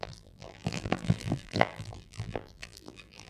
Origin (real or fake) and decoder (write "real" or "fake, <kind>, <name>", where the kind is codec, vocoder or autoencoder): fake, vocoder, BigVGAN v2